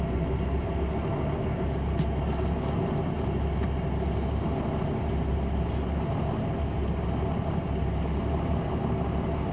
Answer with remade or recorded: recorded